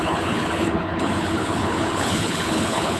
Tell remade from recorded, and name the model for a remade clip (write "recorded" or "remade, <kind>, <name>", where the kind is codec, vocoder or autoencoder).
remade, codec, HILCodec